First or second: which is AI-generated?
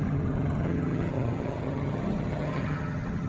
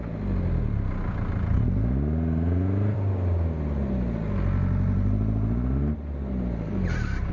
first